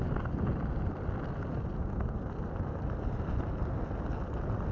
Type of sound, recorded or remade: recorded